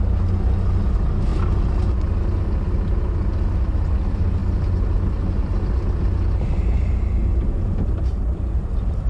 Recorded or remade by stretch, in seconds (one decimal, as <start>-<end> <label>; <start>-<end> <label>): 0.0-9.1 recorded